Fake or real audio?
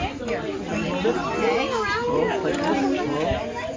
real